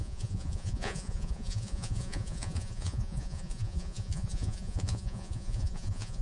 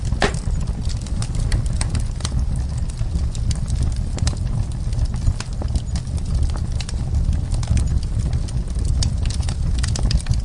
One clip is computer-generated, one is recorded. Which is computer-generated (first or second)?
first